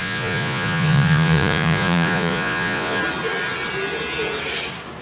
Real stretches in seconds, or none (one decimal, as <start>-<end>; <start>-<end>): 3.0-5.0